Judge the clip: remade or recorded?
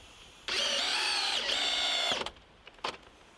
recorded